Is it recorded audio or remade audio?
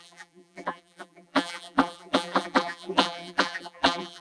remade